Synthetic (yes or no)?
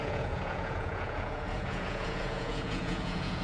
yes